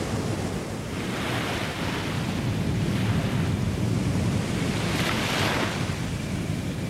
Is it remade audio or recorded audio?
recorded